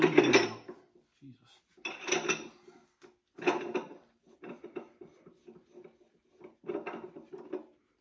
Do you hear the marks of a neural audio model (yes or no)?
no